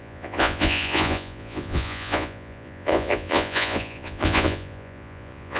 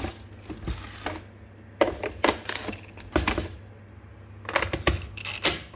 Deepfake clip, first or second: first